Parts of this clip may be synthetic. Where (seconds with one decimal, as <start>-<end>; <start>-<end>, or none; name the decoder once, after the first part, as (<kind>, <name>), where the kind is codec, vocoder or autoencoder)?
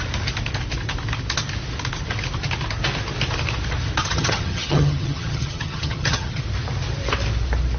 4.0-6.4 (vocoder, HiFi-GAN)